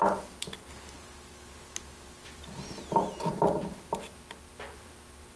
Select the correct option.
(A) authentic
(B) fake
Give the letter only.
A